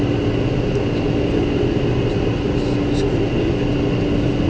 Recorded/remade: recorded